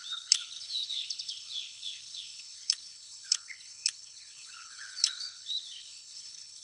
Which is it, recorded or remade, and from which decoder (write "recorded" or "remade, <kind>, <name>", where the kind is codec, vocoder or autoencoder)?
remade, codec, HILCodec